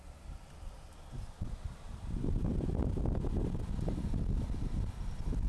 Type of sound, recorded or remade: recorded